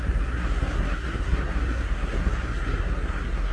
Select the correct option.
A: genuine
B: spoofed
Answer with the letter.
B